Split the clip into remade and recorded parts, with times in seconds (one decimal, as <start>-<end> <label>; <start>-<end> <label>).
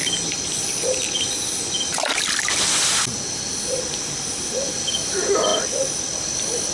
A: 0.0-6.7 recorded